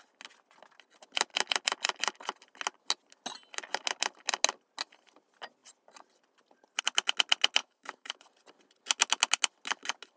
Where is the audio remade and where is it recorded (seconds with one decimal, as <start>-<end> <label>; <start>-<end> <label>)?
0.0-7.6 recorded; 7.6-8.2 remade; 8.2-10.2 recorded

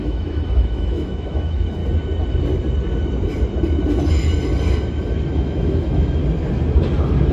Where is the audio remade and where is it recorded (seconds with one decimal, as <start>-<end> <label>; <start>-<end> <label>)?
0.0-1.8 remade; 1.8-5.3 recorded; 5.3-6.2 remade; 6.2-7.3 recorded

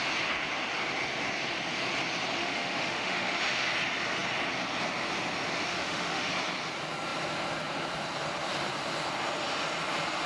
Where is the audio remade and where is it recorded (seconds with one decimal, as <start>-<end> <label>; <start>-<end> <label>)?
0.0-2.4 recorded; 2.4-3.4 remade; 3.4-5.7 recorded; 5.7-6.3 remade; 6.3-10.3 recorded